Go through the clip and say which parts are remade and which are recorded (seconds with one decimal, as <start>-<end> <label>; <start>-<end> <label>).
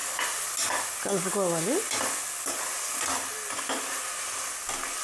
0.0-5.0 recorded